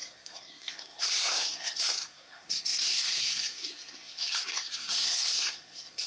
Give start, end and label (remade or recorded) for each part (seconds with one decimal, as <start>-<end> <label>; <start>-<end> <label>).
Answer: 0.0-6.1 remade